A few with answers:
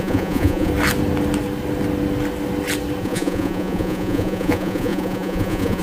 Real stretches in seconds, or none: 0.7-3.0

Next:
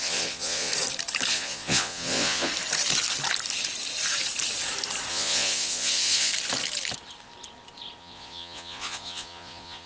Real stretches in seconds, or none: 0.7-1.3; 2.5-5.1; 6.3-8.0

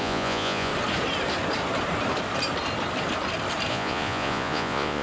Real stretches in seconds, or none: 0.7-3.7